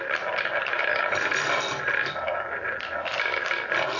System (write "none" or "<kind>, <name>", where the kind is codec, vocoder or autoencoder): none